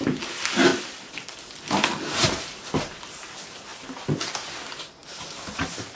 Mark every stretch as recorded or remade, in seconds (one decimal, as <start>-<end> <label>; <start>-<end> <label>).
0.0-0.7 recorded; 0.7-1.4 remade; 1.4-5.0 recorded; 5.0-5.5 remade; 5.5-6.0 recorded